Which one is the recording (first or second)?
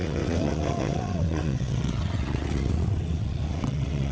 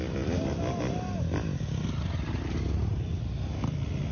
second